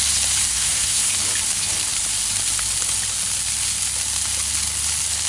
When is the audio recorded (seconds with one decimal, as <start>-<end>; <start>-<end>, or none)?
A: 0.0-0.5; 1.1-5.3

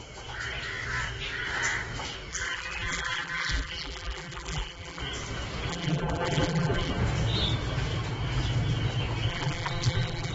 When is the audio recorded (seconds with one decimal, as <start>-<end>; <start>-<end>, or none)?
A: 0.0-2.3; 5.0-5.7; 6.9-9.3

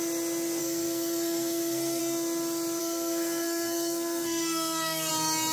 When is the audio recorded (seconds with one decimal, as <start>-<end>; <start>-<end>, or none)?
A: 0.0-0.6; 2.0-2.8; 5.1-5.5

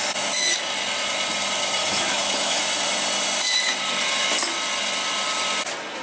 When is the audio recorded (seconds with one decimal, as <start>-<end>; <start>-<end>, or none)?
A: 0.0-1.8; 2.6-6.0

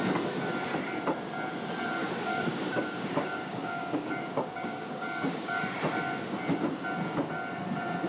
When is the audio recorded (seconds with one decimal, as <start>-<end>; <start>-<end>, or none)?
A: 0.0-2.0; 5.6-8.1

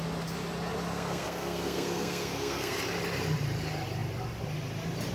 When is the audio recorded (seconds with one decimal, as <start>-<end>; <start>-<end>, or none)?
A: 0.0-0.9; 2.8-5.1

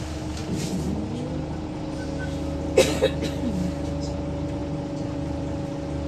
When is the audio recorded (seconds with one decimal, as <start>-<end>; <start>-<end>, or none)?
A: 0.0-6.1

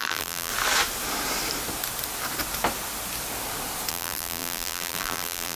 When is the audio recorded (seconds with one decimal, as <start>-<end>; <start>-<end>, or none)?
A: 0.5-3.9